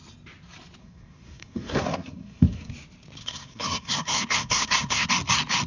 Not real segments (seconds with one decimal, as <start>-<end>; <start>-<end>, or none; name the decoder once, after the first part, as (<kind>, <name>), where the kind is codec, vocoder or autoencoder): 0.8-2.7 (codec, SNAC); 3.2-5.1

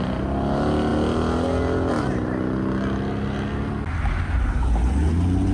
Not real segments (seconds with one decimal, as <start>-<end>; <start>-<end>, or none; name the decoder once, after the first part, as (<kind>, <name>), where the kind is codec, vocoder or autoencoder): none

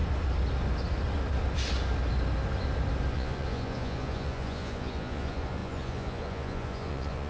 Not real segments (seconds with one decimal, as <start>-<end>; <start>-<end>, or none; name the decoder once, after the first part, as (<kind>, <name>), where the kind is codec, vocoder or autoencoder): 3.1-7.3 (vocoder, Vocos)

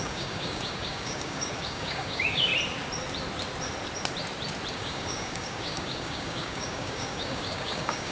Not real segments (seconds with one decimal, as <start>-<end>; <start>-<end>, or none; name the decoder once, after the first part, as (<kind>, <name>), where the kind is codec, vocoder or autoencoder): 0.0-2.5 (codec, DAC); 4.7-8.1

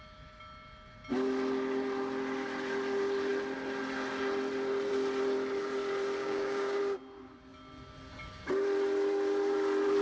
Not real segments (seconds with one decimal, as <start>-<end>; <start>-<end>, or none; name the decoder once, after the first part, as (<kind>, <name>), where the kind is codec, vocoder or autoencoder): 6.2-6.8 (codec, DAC)

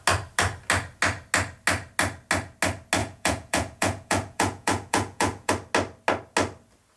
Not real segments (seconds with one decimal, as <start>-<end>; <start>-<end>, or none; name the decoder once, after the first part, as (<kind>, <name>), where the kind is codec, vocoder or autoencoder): 3.0-5.5 (vocoder, Vocos)